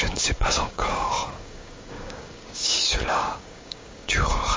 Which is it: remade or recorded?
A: remade